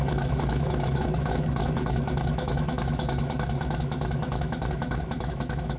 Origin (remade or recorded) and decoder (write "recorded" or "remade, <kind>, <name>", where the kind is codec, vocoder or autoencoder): remade, autoencoder, DAC-VAE